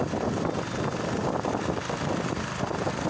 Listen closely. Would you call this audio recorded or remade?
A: recorded